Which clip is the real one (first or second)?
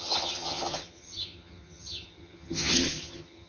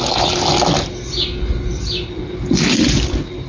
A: second